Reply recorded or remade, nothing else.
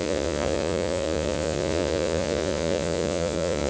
remade